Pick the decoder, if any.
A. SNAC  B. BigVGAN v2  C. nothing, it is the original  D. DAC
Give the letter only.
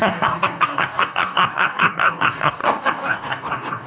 D